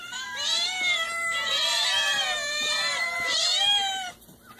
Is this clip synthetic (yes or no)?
yes